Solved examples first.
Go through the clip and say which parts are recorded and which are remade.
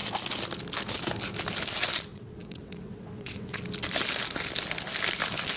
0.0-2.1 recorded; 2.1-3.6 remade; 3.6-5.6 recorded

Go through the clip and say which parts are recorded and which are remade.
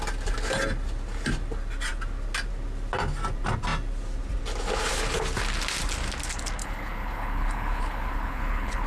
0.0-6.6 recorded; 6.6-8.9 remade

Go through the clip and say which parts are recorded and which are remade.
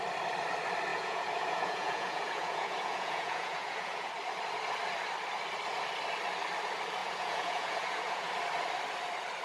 0.0-0.9 recorded; 0.9-4.1 remade; 4.1-7.0 recorded; 7.0-8.3 remade; 8.3-9.4 recorded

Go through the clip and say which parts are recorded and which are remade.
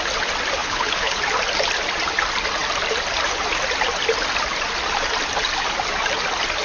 0.0-0.6 recorded; 0.6-1.2 remade; 1.2-6.6 recorded